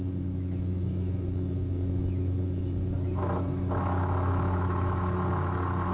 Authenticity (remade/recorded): remade